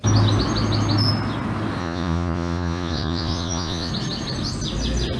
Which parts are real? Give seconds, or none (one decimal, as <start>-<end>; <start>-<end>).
0.0-1.8; 3.9-5.2